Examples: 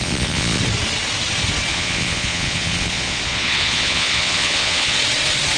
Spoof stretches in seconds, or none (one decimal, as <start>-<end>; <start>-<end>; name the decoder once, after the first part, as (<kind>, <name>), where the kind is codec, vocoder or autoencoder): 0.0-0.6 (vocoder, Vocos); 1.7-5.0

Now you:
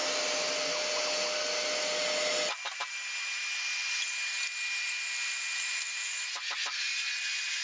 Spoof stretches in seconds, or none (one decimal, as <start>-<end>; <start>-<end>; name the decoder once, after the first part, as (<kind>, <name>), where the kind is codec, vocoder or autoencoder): none

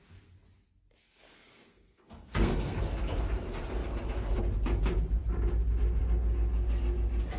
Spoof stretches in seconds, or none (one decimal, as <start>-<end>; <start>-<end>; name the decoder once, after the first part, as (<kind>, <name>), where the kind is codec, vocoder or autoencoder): 1.0-2.8 (codec, SNAC)

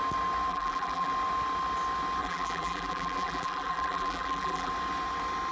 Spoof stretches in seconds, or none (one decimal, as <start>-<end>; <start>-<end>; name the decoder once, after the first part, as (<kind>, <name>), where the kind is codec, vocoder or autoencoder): 0.5-1.1 (vocoder, BigVGAN v2); 2.2-4.7

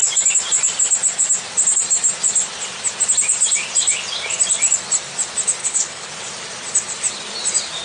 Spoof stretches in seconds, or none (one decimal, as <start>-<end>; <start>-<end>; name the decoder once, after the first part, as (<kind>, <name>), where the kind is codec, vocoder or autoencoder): 5.6-6.1 (codec, HILCodec)

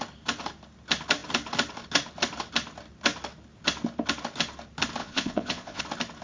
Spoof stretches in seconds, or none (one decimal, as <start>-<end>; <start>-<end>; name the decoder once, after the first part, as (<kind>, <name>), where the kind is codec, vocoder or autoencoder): 5.0-5.8 (vocoder, Vocos)

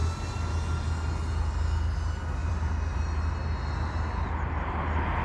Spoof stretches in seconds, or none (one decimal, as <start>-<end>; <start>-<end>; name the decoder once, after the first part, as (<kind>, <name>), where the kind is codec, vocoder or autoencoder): 2.4-3.2 (vocoder, BigVGAN v2)

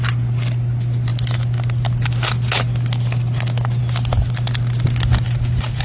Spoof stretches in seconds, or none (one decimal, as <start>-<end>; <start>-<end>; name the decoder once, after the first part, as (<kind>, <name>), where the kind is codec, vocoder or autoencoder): none